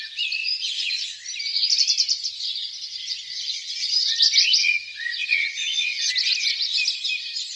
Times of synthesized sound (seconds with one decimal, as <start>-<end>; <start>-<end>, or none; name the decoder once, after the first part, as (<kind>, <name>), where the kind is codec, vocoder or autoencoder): 0.4-1.1 (vocoder, Vocos); 3.2-3.9; 4.6-6.1